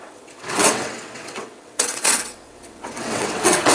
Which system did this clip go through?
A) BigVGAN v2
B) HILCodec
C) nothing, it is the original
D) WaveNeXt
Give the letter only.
D